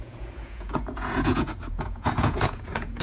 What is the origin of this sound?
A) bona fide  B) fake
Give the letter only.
B